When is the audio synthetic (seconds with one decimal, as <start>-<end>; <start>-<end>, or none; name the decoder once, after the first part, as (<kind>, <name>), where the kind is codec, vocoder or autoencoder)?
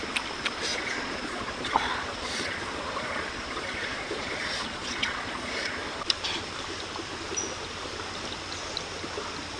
0.7-5.7 (vocoder, Vocos)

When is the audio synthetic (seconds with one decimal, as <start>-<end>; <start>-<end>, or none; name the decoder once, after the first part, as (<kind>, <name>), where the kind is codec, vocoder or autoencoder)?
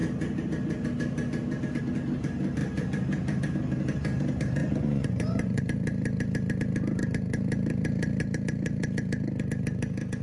4.6-5.6 (vocoder, Vocos)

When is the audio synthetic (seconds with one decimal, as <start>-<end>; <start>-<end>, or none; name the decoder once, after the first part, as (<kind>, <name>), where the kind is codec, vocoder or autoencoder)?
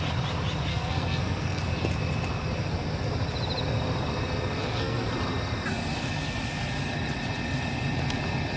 0.7-1.6 (codec, SNAC); 4.6-5.1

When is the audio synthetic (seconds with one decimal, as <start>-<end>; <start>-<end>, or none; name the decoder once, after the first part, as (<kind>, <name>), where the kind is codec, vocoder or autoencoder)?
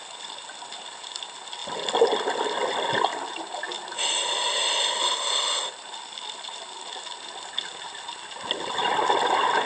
none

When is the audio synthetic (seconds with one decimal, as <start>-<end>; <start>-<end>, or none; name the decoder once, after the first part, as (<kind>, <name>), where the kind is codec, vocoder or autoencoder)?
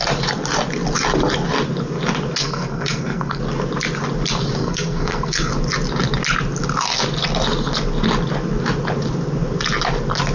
2.4-3.4 (codec, SNAC); 4.6-5.5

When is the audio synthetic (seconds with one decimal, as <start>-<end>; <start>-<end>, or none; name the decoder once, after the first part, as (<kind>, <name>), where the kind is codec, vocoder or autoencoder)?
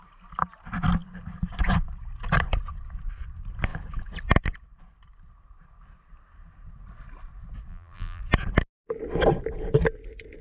7.7-8.2 (vocoder, BigVGAN v2)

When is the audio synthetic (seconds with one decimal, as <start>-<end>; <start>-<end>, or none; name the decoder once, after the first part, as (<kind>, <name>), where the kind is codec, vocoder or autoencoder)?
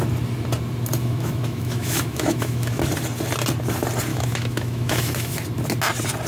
1.0-2.8 (autoencoder, DAC-VAE); 4.1-5.3